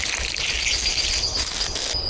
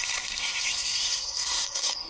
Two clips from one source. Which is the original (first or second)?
first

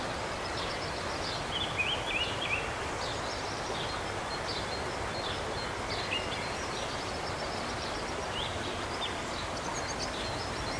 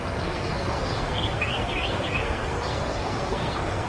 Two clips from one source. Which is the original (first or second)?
first